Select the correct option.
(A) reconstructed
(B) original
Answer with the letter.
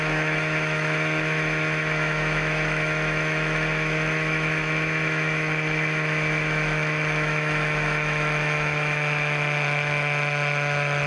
A